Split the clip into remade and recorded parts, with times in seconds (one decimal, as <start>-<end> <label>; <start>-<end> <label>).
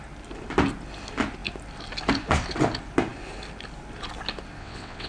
0.0-4.6 recorded; 4.6-5.1 remade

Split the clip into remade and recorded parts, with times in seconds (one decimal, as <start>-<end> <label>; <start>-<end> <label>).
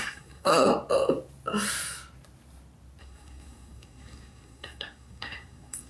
0.0-0.7 remade; 0.7-3.0 recorded; 3.0-5.9 remade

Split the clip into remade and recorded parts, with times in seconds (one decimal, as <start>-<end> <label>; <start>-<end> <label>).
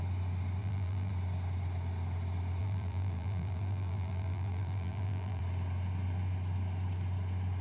0.0-0.6 recorded; 0.6-1.1 remade; 1.1-2.6 recorded; 2.6-5.4 remade; 5.4-7.6 recorded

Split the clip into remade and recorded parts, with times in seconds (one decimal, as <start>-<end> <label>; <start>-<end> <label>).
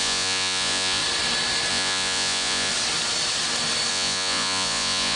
0.0-1.0 remade; 1.0-1.7 recorded; 1.7-2.7 remade; 2.7-3.9 recorded; 3.9-5.2 remade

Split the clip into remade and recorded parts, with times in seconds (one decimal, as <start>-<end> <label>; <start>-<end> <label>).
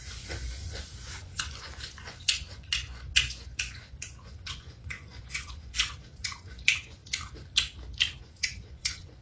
0.0-7.0 remade; 7.0-8.2 recorded; 8.2-9.2 remade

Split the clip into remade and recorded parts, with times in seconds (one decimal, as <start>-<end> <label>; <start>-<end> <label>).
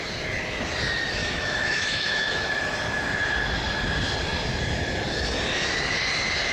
0.0-1.2 recorded; 1.2-2.5 remade; 2.5-6.5 recorded